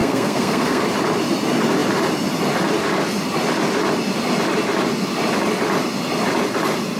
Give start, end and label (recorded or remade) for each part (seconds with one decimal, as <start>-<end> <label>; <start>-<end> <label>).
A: 0.0-0.8 remade; 0.8-7.0 recorded

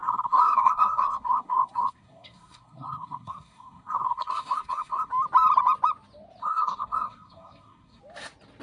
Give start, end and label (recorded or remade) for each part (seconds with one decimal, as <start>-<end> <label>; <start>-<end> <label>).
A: 0.0-5.1 remade; 5.1-6.4 recorded; 6.4-8.0 remade; 8.0-8.6 recorded

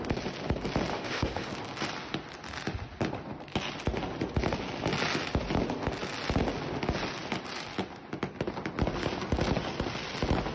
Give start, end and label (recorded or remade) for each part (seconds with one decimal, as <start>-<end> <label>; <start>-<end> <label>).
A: 0.0-0.9 recorded; 0.9-1.5 remade; 1.5-10.5 recorded

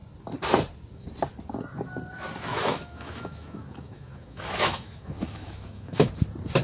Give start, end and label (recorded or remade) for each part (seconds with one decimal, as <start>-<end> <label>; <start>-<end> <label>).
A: 0.0-2.5 recorded; 2.5-6.1 remade; 6.1-6.6 recorded

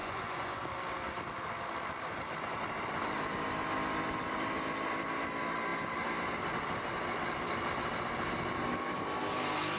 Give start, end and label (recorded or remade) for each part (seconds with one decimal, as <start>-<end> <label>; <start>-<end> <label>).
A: 0.0-0.6 remade; 0.6-9.8 recorded

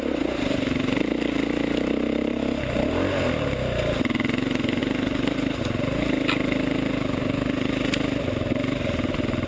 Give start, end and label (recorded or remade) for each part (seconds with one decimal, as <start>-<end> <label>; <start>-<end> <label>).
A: 0.0-9.5 recorded